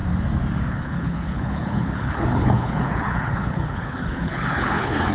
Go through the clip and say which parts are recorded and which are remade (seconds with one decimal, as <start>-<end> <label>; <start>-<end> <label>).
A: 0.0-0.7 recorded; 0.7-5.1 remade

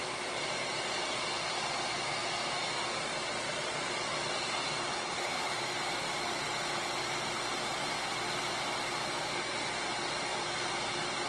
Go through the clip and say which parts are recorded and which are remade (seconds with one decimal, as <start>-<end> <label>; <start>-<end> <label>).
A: 0.0-4.9 recorded; 4.9-5.5 remade; 5.5-11.3 recorded

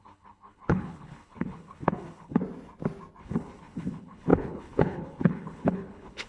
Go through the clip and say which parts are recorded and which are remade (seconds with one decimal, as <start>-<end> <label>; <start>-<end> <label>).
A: 0.0-2.4 remade; 2.4-3.2 recorded; 3.2-6.3 remade

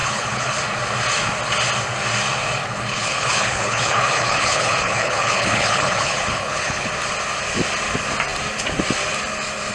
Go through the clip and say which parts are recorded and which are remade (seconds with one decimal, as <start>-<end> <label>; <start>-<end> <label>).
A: 0.0-0.6 remade; 0.6-2.6 recorded; 2.6-6.9 remade; 6.9-9.7 recorded

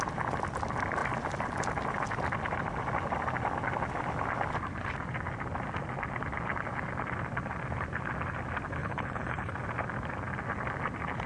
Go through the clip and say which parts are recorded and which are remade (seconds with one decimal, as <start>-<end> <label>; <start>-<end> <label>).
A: 0.0-8.8 recorded; 8.8-9.5 remade; 9.5-11.3 recorded

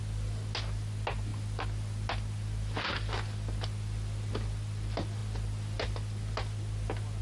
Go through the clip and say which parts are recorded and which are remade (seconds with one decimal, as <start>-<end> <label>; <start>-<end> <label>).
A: 0.0-7.2 recorded

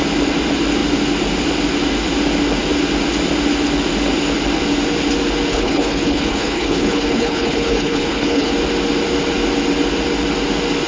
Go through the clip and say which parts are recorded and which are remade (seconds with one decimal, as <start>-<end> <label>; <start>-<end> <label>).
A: 0.0-5.5 recorded; 5.5-8.5 remade; 8.5-10.9 recorded